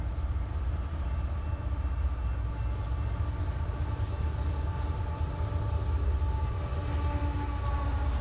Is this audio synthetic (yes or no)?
no